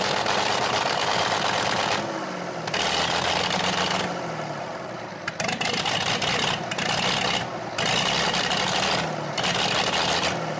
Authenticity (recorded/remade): recorded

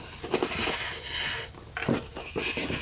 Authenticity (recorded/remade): recorded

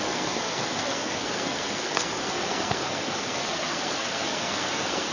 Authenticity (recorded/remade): remade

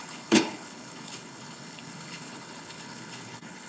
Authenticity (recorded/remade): remade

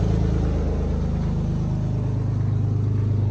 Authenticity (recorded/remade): recorded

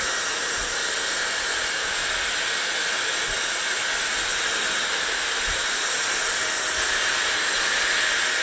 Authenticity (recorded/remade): recorded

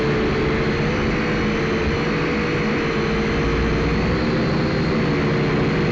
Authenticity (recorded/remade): recorded